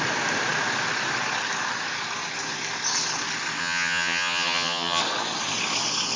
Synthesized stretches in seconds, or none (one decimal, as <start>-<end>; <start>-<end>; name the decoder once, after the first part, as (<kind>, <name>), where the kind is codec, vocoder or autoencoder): 3.6-5.0 (vocoder, HiFi-GAN)

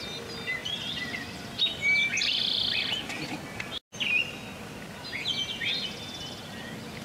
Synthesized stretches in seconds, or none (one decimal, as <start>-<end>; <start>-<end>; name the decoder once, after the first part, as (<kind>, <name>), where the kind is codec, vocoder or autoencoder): none